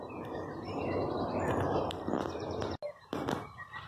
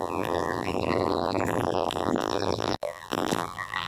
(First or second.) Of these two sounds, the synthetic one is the second